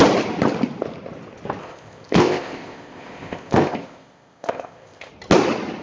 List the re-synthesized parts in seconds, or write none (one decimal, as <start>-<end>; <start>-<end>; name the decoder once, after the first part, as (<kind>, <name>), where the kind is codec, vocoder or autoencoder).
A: 1.6-5.1 (codec, ZipCodec)